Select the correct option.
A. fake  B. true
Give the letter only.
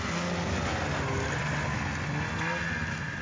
B